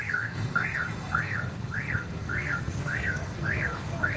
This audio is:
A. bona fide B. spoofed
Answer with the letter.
B